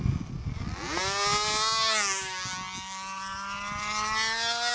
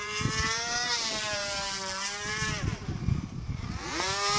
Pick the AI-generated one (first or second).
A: second